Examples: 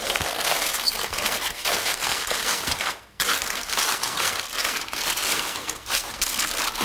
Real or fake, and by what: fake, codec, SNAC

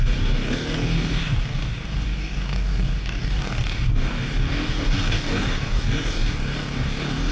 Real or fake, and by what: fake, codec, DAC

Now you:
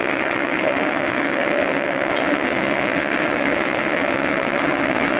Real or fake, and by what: fake, vocoder, WaveNeXt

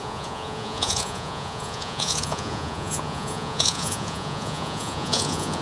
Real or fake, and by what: fake, vocoder, Vocos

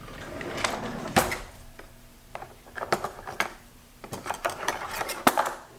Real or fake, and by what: fake, vocoder, BigVGAN v2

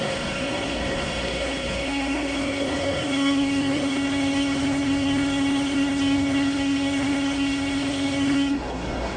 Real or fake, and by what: fake, codec, SNAC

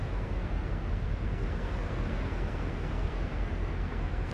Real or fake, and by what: fake, codec, SNAC